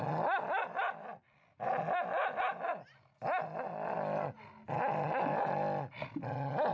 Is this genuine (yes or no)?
yes